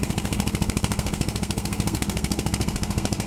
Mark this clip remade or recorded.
remade